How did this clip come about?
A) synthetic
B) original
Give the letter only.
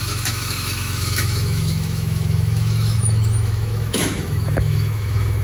A